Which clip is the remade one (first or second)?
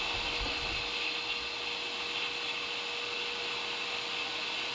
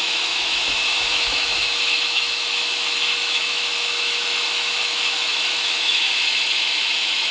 second